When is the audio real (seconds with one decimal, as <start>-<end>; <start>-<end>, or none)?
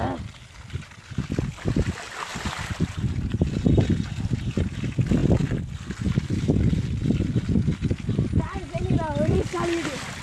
0.0-10.2